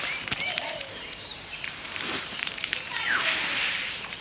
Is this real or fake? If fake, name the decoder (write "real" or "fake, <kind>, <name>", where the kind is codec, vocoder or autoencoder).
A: fake, vocoder, BigVGAN v2